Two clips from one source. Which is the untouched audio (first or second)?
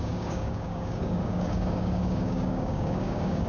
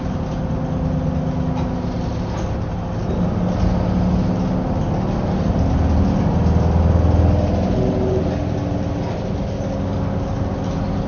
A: second